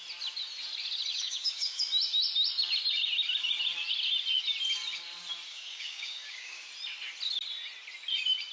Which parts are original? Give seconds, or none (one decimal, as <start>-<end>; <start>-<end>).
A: 0.0-1.1; 1.8-5.5; 6.7-8.5